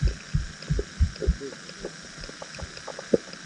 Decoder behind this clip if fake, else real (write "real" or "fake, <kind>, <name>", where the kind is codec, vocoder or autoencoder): real